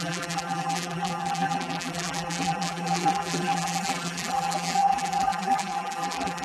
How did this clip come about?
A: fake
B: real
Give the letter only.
A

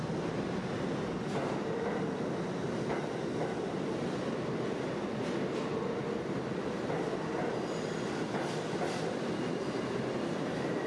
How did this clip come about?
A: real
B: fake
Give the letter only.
A